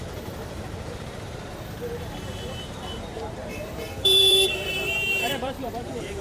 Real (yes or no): no